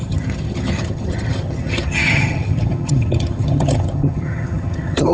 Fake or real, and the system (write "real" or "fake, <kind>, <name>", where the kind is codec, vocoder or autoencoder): fake, vocoder, HiFi-GAN